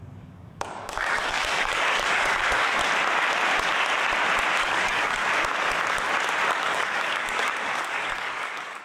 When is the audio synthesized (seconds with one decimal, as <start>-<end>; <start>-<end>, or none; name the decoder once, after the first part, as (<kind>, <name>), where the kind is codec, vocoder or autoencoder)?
0.0-2.8 (codec, DAC); 4.5-5.2; 6.6-8.8